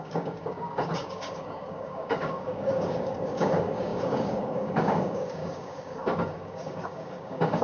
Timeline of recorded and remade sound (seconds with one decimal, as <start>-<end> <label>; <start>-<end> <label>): 0.0-7.6 remade